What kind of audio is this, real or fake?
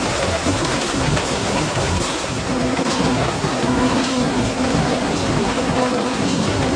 fake